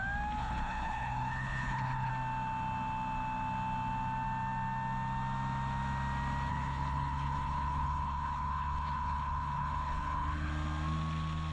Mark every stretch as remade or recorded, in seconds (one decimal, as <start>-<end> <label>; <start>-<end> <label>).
0.0-0.4 recorded; 0.4-2.1 remade; 2.1-6.5 recorded; 6.5-10.5 remade; 10.5-11.5 recorded